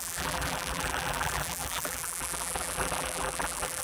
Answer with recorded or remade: remade